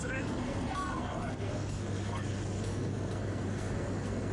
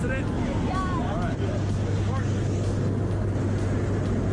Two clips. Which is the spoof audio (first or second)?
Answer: first